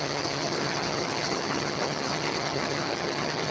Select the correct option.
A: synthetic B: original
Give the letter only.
A